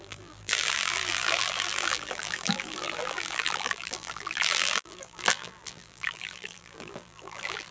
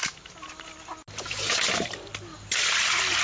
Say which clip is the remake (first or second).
first